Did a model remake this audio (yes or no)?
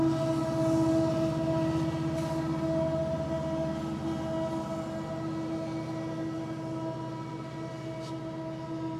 no